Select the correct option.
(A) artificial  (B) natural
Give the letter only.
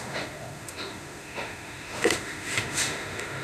A